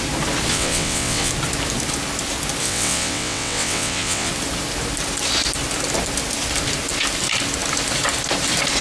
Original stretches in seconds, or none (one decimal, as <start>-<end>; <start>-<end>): 0.0-0.5; 1.3-2.6; 4.3-8.8